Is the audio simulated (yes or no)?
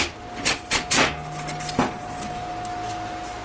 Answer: no